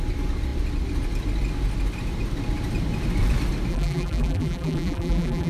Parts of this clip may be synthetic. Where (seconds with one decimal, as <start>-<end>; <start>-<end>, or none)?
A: 3.7-5.5